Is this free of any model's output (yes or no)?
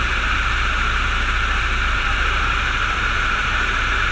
no